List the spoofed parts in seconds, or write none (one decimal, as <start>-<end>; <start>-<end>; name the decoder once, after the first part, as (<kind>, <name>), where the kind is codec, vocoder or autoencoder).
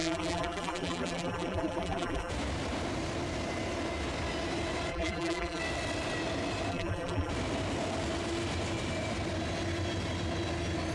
0.0-2.3 (vocoder, BigVGAN v2); 4.9-5.6; 6.7-7.3